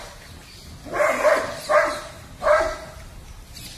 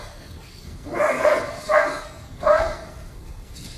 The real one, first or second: first